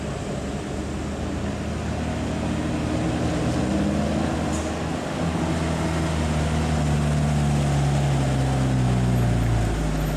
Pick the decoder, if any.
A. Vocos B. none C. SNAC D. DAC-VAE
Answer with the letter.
B